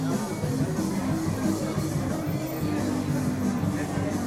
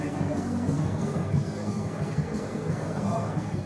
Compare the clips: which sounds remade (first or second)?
second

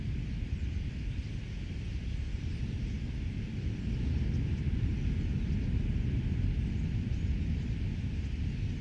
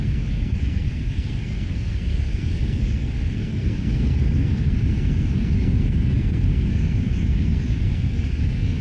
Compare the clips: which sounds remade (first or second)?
second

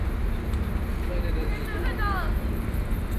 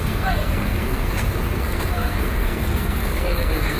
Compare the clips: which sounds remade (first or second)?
second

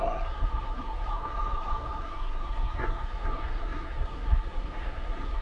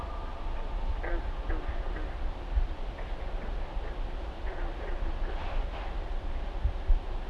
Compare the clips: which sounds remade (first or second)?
first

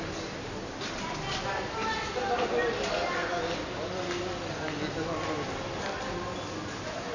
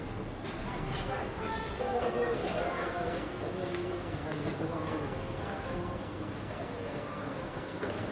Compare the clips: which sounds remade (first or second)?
second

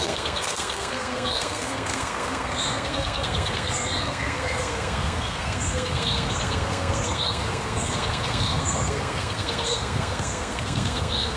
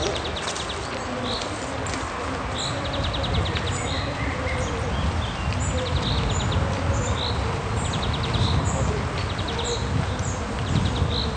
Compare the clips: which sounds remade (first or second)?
first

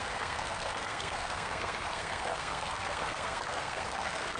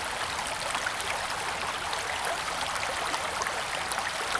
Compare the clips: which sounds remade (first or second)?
first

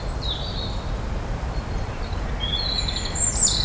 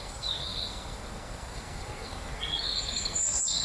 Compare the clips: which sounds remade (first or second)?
second